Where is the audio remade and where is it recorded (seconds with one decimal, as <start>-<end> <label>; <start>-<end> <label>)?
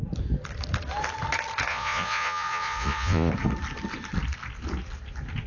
0.0-1.7 recorded; 1.7-3.3 remade; 3.3-5.5 recorded